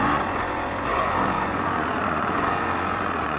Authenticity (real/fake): fake